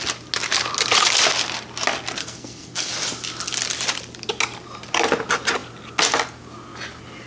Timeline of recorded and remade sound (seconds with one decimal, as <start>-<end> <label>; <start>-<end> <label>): 0.0-2.2 recorded; 2.2-2.9 remade; 2.9-7.3 recorded